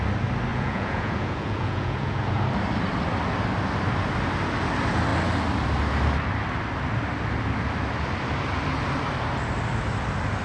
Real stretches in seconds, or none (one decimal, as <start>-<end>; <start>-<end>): 0.0-0.5; 2.4-10.4